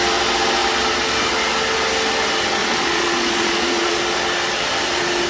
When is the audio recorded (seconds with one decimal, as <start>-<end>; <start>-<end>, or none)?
0.0-2.6; 4.0-5.3